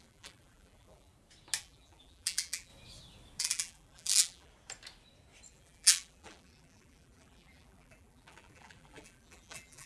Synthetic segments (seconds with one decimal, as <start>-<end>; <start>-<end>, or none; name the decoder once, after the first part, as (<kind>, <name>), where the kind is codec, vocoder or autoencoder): 0.0-1.1 (vocoder, BigVGAN v2); 1.6-2.7; 3.4-4.5; 5.5-9.9